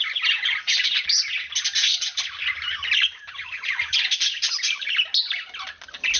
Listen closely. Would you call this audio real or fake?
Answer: real